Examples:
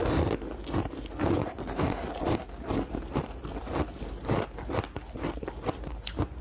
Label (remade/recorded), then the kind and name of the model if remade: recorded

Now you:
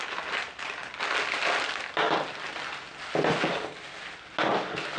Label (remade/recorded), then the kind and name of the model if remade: recorded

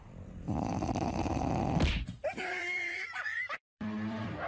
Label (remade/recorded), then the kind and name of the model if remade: remade, vocoder, BigVGAN v2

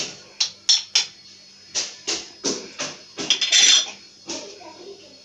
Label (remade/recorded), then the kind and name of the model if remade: recorded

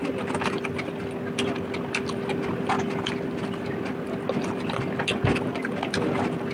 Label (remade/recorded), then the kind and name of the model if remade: recorded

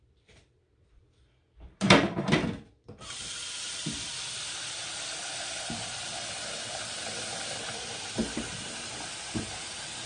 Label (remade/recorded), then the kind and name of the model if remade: remade, vocoder, BigVGAN v2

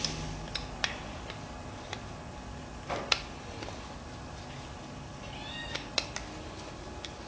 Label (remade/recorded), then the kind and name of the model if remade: recorded